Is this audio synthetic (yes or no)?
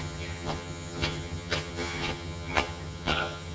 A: yes